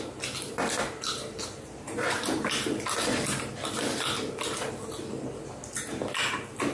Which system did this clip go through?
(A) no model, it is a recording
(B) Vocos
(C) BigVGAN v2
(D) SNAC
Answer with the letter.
A